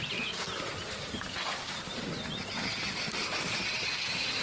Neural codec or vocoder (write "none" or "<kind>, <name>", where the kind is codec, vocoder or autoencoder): none